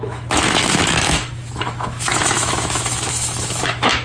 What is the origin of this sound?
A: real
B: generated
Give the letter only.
B